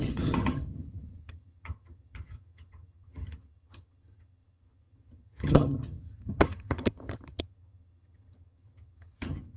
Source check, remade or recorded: remade